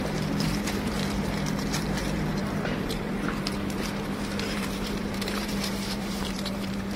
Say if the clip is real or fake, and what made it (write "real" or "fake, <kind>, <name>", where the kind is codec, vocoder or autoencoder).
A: fake, vocoder, BigVGAN v2